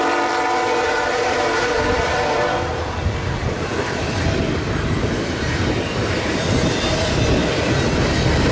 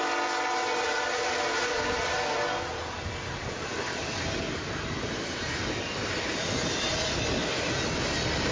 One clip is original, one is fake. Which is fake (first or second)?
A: first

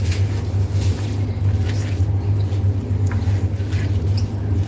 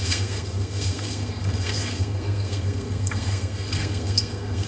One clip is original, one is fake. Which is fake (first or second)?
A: second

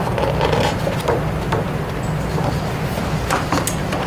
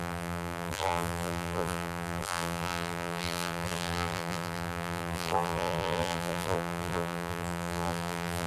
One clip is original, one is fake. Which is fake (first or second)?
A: second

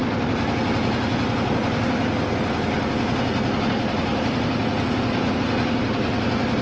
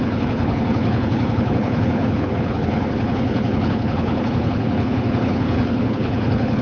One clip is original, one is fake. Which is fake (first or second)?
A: second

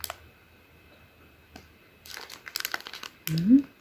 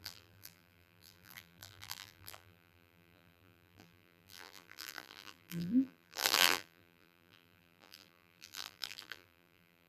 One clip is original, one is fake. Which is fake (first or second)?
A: second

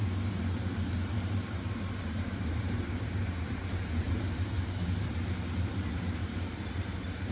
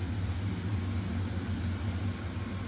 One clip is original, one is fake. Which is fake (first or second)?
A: first